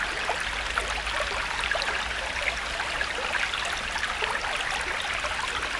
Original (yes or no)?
yes